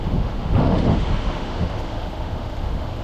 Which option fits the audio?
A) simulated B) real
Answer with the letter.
A